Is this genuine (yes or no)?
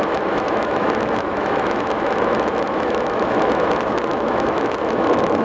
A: no